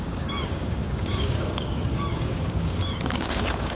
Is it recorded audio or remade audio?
remade